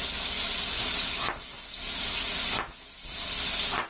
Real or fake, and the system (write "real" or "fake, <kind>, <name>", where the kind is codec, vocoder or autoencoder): real